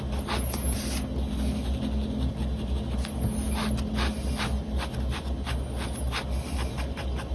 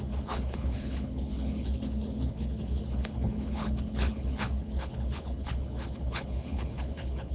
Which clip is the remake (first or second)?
second